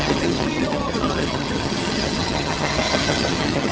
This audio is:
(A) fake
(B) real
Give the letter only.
A